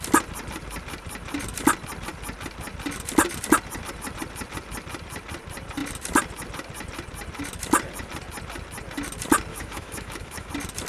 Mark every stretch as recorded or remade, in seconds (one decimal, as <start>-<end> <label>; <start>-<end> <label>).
0.0-9.5 recorded; 9.5-10.5 remade; 10.5-10.9 recorded